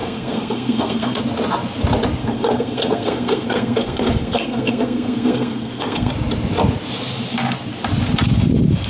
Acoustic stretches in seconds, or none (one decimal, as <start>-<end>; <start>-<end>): 1.2-2.2; 6.1-8.9